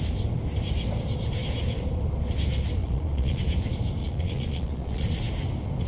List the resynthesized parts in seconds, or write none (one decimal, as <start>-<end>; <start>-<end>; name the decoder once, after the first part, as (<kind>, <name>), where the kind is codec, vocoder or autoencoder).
2.8-3.4 (vocoder, Vocos); 4.0-5.2